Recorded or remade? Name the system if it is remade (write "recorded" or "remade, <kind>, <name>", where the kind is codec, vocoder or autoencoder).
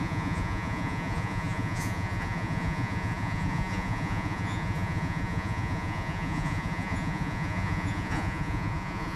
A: remade, vocoder, Vocos